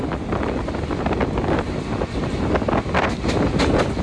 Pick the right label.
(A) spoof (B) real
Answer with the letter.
B